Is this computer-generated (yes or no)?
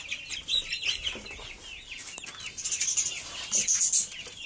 no